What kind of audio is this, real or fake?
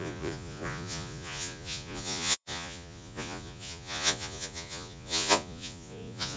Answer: fake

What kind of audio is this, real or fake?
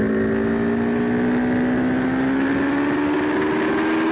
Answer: real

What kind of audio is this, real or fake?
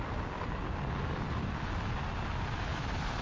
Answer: real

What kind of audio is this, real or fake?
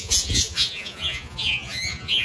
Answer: fake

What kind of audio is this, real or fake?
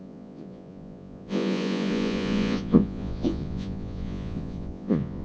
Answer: fake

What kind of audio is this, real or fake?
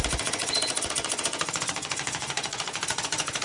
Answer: fake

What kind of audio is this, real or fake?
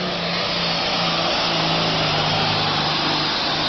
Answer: real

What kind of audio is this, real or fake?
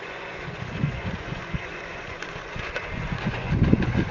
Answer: fake